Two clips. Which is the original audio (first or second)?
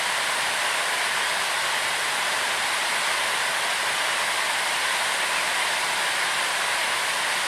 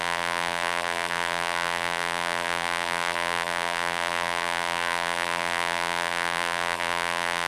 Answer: first